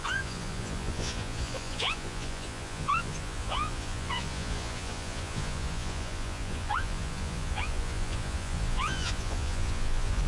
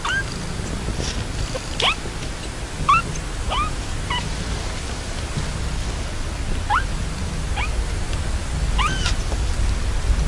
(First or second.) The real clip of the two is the second